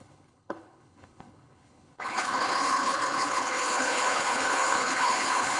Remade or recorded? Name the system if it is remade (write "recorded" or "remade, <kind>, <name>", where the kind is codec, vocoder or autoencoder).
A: remade, codec, HILCodec